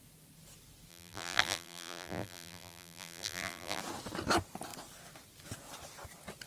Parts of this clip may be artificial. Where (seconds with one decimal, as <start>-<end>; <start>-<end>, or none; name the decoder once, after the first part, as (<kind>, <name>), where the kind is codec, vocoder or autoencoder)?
0.9-3.8 (vocoder, BigVGAN v2)